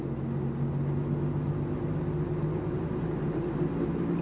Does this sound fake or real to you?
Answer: real